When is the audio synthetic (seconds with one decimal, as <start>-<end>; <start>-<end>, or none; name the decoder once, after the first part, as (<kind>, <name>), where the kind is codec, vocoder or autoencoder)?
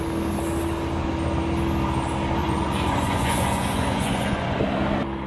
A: 2.4-4.6 (vocoder, Vocos)